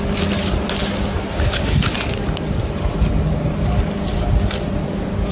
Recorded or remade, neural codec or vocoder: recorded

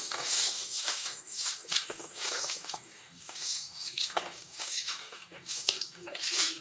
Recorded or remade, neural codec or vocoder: remade, codec, DAC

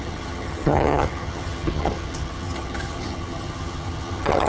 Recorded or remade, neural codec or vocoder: remade, vocoder, HiFi-GAN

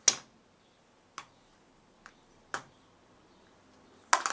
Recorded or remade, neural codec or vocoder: recorded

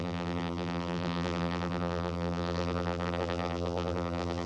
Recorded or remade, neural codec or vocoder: remade, vocoder, BigVGAN v2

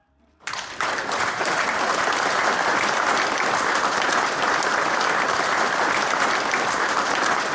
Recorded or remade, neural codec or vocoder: recorded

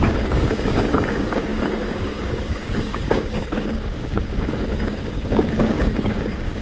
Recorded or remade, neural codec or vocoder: remade, codec, DAC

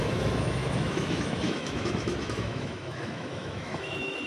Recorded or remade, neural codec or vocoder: remade, autoencoder, DAC-VAE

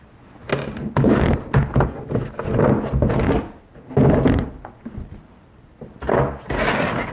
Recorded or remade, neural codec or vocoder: recorded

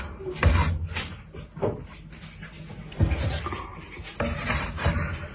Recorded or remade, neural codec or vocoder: recorded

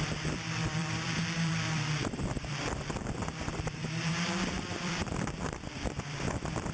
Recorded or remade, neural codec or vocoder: remade, vocoder, BigVGAN v2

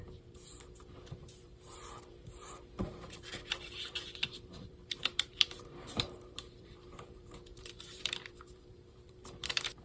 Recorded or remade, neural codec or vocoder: remade, vocoder, BigVGAN v2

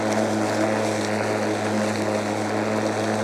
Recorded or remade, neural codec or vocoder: recorded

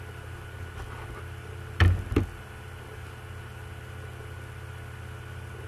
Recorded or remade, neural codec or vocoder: recorded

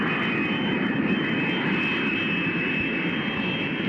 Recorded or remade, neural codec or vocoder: remade, vocoder, BigVGAN v2